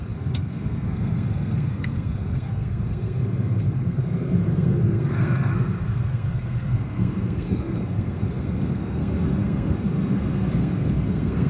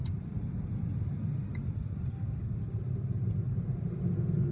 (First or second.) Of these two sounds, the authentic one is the second